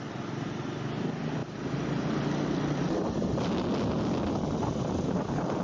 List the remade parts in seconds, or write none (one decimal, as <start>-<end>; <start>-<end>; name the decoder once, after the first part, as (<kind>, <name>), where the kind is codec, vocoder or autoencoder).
none